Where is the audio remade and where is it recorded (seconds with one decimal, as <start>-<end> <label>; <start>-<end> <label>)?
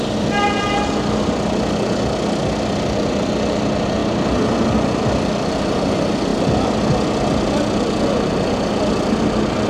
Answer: 0.0-9.7 recorded